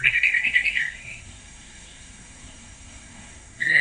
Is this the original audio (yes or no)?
no